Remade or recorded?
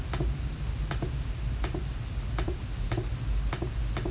recorded